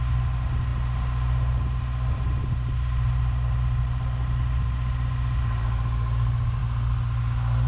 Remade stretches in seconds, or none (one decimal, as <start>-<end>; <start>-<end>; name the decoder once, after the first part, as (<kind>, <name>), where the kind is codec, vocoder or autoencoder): none